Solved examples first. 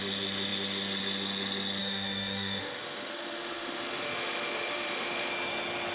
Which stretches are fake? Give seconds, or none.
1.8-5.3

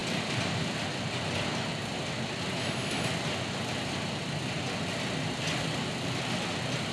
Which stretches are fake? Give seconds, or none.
2.6-3.1

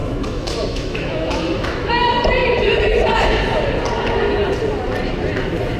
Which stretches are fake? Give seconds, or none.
0.0-1.9

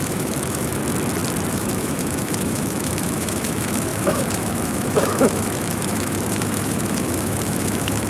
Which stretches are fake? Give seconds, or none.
0.0-0.8; 1.5-8.1

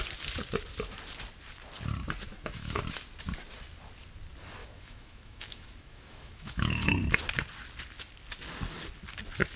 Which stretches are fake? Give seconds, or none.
2.3-2.8; 4.6-6.9

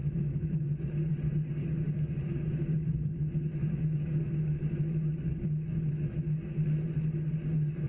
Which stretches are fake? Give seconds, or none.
0.0-1.1; 1.6-6.2